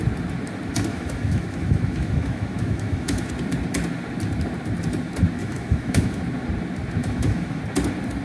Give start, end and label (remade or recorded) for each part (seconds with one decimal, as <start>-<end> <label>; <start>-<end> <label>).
0.0-0.9 recorded; 0.9-3.3 remade; 3.3-5.4 recorded; 5.4-6.2 remade; 6.2-7.0 recorded; 7.0-7.6 remade; 7.6-8.2 recorded